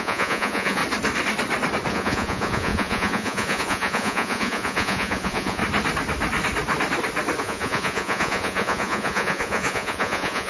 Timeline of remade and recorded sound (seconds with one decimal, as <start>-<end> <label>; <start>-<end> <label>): 0.0-0.8 remade; 0.8-1.9 recorded; 1.9-5.6 remade; 5.6-7.4 recorded; 7.4-10.5 remade